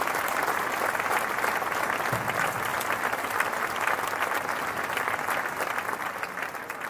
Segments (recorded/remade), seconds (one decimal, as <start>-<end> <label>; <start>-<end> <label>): 0.0-6.9 recorded